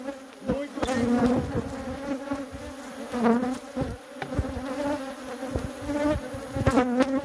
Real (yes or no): yes